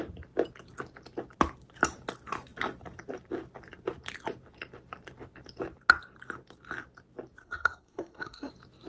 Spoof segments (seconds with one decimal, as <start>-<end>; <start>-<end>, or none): 7.4-8.5